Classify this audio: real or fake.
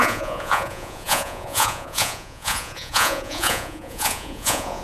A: fake